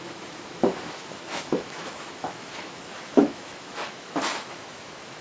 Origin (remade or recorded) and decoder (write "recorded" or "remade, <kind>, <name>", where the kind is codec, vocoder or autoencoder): remade, autoencoder, DAC-VAE